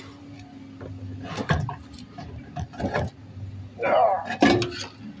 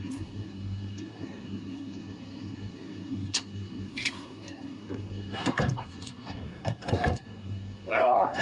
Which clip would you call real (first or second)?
first